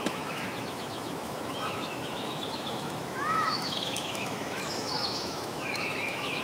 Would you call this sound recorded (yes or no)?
no